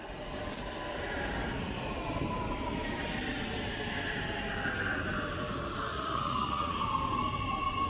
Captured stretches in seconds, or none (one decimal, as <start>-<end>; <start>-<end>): 0.0-5.9; 6.8-7.9